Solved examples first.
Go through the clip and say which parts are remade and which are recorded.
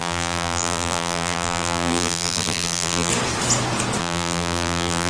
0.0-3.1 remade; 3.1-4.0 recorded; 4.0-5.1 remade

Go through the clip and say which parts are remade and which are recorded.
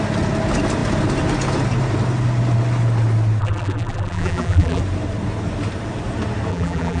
0.0-3.4 recorded; 3.4-4.8 remade; 4.8-6.5 recorded; 6.5-7.0 remade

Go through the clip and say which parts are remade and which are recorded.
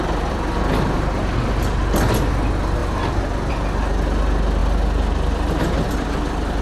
0.0-6.6 recorded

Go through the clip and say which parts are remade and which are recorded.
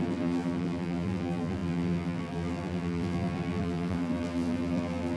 0.0-5.2 remade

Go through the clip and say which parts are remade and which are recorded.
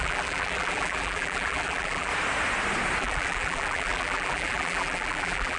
0.0-2.1 remade; 2.1-3.0 recorded; 3.0-5.6 remade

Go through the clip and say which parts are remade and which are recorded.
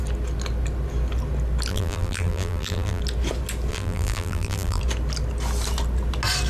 0.0-1.7 recorded; 1.7-3.0 remade; 3.0-3.7 recorded; 3.7-4.8 remade; 4.8-6.5 recorded